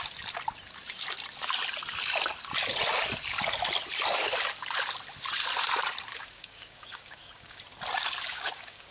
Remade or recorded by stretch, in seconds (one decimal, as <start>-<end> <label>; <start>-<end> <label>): 0.0-6.1 recorded; 6.1-7.6 remade; 7.6-8.3 recorded; 8.3-8.9 remade